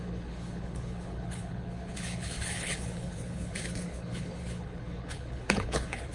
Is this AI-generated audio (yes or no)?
yes